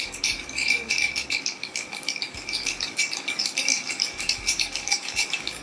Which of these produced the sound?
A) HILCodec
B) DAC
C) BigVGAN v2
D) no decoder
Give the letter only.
B